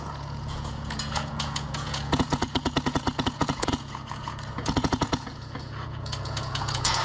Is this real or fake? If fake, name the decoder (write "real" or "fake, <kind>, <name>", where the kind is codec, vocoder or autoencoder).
fake, vocoder, Vocos